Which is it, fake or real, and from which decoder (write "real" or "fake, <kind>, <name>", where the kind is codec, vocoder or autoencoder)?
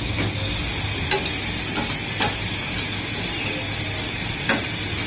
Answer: real